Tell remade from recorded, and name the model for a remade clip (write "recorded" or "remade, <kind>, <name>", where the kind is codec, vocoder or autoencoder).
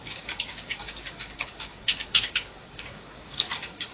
remade, codec, DAC